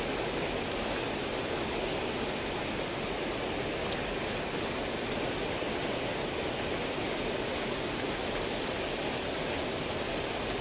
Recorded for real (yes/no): yes